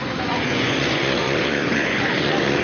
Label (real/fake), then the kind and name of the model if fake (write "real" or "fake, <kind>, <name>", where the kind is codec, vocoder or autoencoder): fake, vocoder, Vocos